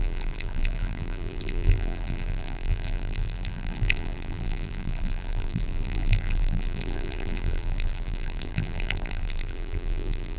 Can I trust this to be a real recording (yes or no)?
no